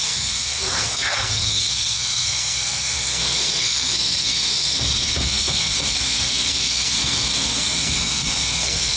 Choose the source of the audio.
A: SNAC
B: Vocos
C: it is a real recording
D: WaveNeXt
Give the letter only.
A